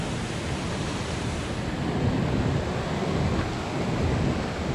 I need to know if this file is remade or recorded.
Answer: recorded